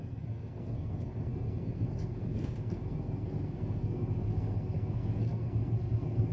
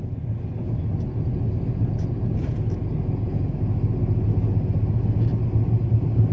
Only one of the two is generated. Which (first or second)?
first